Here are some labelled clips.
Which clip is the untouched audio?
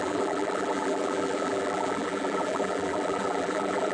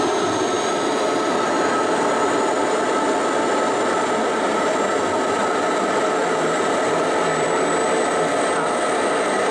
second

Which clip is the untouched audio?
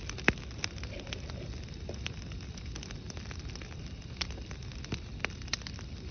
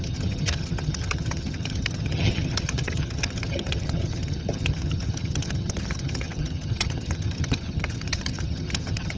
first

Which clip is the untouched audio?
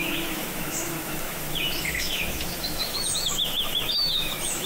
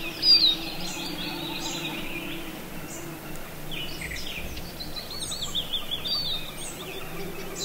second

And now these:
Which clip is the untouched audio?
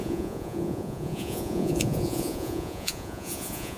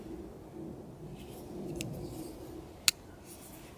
second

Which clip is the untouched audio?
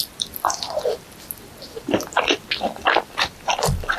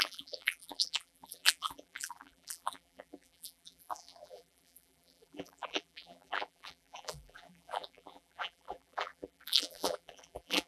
first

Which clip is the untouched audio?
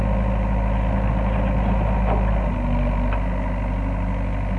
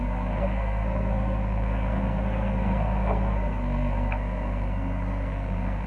first